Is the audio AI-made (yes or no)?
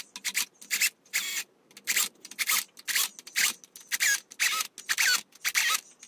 no